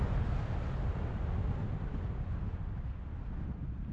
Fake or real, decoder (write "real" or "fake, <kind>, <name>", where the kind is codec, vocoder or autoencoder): real